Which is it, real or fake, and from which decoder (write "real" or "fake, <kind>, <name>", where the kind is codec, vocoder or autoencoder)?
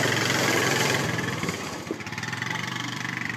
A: fake, vocoder, BigVGAN v2